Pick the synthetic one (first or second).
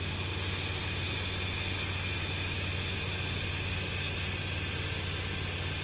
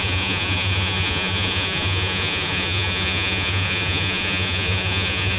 second